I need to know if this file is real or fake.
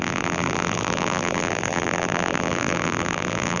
fake